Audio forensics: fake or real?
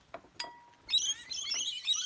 real